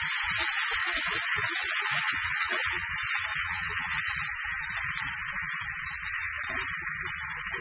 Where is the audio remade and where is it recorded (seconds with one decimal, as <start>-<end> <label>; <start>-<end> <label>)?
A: 0.0-0.8 recorded; 0.8-2.9 remade; 2.9-3.3 recorded; 3.3-4.0 remade; 4.0-7.6 recorded